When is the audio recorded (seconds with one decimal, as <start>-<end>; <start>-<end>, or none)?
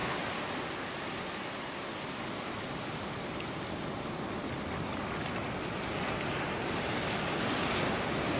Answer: 0.0-8.4